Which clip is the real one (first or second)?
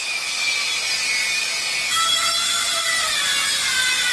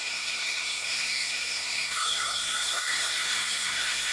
first